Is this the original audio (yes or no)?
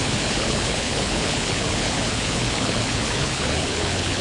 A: no